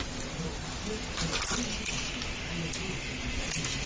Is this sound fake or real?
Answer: real